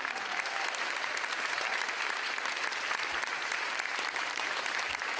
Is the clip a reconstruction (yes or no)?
yes